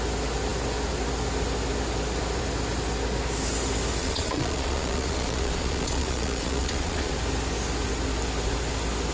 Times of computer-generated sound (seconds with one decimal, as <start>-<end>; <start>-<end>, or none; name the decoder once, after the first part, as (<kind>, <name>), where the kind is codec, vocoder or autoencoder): 4.0-7.1 (vocoder, Vocos)